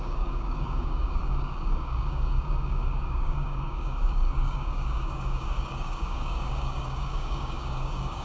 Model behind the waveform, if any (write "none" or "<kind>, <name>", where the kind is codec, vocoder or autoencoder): codec, DAC